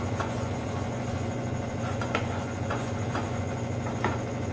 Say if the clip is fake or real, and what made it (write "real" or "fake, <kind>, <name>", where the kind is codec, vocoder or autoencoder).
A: fake, vocoder, Vocos